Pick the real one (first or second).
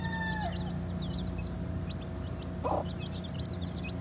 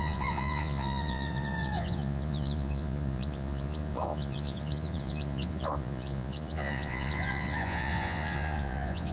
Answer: first